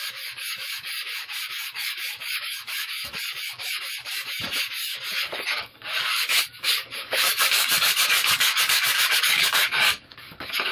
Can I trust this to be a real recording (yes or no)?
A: no